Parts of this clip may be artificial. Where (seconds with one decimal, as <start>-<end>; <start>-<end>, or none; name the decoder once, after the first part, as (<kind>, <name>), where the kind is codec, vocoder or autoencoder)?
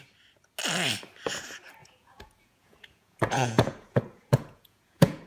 1.8-5.3 (vocoder, Vocos)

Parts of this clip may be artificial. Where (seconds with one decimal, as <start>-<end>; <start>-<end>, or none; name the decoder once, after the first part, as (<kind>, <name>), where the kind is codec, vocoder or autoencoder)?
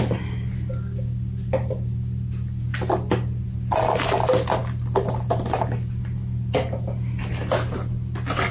none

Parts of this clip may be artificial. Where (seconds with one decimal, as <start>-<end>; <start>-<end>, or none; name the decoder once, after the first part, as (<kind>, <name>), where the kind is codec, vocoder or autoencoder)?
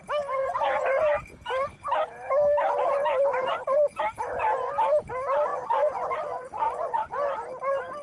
0.4-1.0 (vocoder, Vocos); 5.5-7.1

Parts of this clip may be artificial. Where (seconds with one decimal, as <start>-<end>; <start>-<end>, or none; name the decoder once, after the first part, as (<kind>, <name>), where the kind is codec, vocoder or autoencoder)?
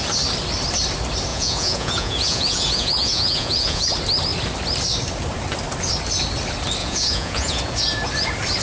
1.3-3.9 (vocoder, Vocos); 6.8-7.6